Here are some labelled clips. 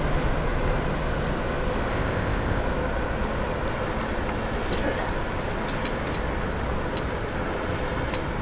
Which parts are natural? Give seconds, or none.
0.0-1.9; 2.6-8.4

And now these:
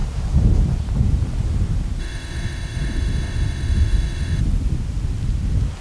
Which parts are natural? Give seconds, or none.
0.0-2.0; 4.4-5.8

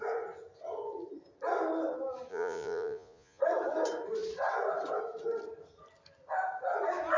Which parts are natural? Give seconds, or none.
0.0-2.3; 3.4-7.2

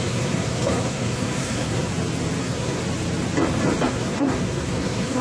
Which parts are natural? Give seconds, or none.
1.9-2.4; 2.8-3.9

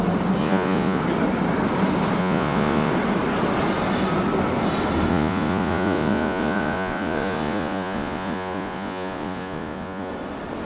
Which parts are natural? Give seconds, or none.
0.0-0.4; 1.0-2.2; 2.9-5.1; 10.1-10.6

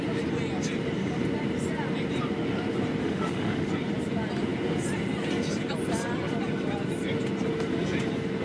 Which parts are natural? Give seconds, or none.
0.0-3.0; 3.7-8.4

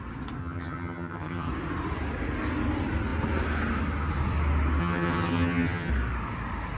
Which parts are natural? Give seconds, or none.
0.0-0.4; 1.5-4.8; 5.9-6.8

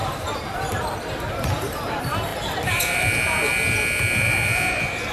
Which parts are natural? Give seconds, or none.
2.3-5.1